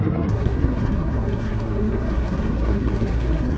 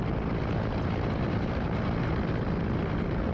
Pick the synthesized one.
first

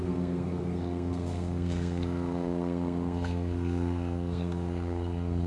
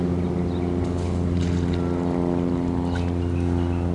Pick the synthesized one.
first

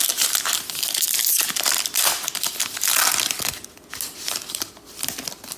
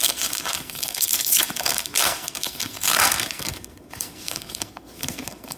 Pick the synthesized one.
second